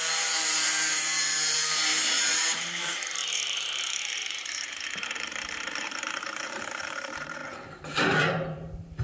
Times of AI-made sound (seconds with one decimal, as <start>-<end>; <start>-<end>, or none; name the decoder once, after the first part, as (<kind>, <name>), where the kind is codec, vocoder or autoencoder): 0.0-7.4 (vocoder, BigVGAN v2); 8.2-9.0